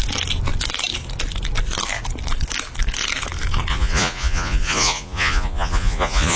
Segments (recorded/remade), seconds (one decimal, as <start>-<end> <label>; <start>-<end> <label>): 0.0-3.7 recorded; 3.7-6.4 remade